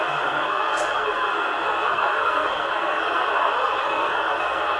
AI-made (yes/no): yes